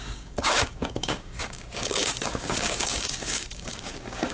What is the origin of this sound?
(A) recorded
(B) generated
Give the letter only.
B